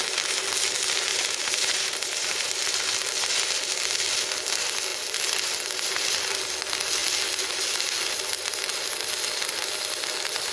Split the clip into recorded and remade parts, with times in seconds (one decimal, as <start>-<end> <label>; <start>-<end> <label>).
0.0-1.1 recorded; 1.1-2.5 remade; 2.5-10.5 recorded